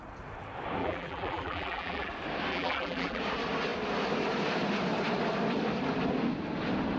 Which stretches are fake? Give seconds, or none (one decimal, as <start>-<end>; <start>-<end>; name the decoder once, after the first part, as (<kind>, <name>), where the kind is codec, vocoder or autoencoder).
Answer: 0.8-2.1 (vocoder, BigVGAN v2); 2.5-3.2